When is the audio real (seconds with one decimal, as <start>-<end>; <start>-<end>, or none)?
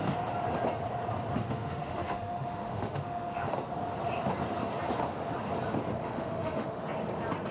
0.0-1.4; 3.5-6.0; 6.8-7.5